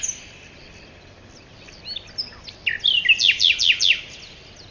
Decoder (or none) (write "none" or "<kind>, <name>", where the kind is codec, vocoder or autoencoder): none